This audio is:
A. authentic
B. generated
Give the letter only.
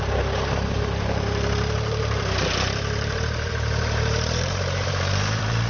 B